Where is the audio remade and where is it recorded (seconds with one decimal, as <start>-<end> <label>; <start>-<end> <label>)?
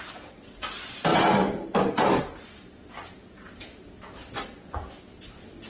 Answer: 0.0-5.7 recorded